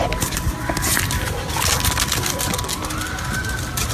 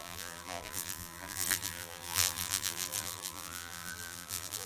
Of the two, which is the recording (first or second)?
first